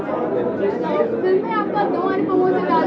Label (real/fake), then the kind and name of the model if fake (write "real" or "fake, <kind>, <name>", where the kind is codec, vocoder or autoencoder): real